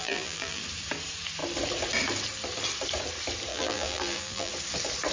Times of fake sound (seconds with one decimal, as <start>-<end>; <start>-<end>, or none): 0.0-0.6; 3.5-4.5